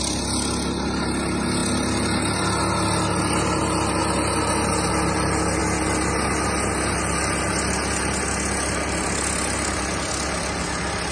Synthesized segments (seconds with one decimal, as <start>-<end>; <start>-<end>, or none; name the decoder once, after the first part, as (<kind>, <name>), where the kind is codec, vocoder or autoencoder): none